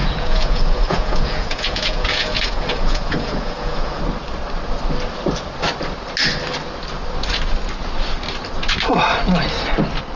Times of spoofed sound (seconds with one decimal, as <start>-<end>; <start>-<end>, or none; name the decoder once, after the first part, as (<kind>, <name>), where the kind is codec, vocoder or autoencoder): 0.0-4.0 (vocoder, Vocos)